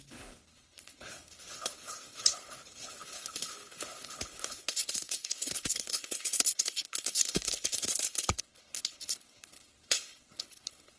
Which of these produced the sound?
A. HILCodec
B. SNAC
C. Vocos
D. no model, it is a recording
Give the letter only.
A